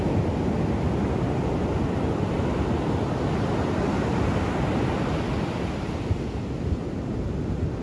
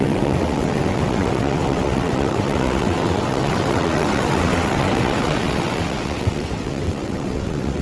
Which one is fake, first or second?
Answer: second